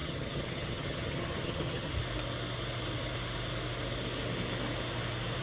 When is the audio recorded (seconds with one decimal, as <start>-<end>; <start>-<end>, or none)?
1.9-5.4